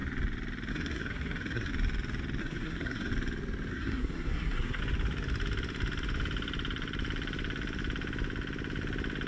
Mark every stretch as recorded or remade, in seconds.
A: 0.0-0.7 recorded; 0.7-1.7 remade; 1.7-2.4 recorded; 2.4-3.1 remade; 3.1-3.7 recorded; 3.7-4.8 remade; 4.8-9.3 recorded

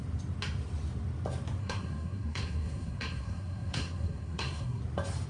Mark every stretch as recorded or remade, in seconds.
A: 0.0-1.6 recorded; 1.6-4.8 remade; 4.8-5.3 recorded

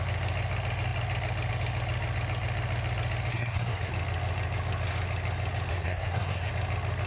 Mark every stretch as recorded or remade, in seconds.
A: 0.0-3.3 recorded; 3.3-3.9 remade; 3.9-5.7 recorded; 5.7-6.5 remade; 6.5-7.1 recorded

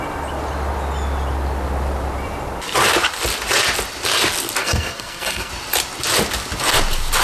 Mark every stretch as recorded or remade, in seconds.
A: 0.0-4.6 recorded; 4.6-5.5 remade; 5.5-7.2 recorded

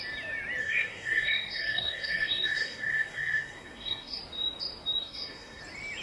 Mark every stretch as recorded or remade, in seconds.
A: 0.0-0.6 recorded; 0.6-4.2 remade; 4.2-5.0 recorded; 5.0-5.6 remade; 5.6-6.0 recorded

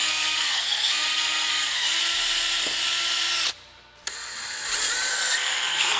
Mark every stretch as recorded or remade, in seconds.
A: 0.0-2.0 remade; 2.0-5.1 recorded; 5.1-6.0 remade